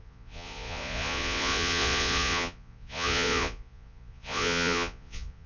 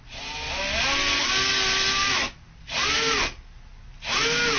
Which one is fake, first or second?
first